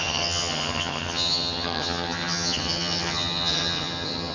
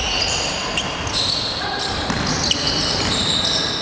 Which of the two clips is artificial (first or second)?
first